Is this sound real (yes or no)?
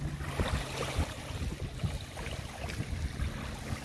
yes